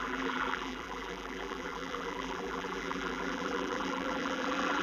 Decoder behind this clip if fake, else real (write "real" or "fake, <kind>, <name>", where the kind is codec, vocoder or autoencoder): fake, vocoder, BigVGAN v2